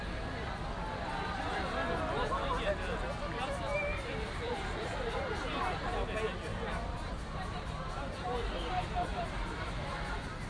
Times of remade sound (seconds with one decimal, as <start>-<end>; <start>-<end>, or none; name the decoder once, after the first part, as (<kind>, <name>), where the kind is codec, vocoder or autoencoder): 3.9-5.2 (vocoder, BigVGAN v2); 9.1-10.1